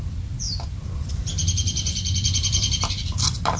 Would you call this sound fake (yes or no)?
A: yes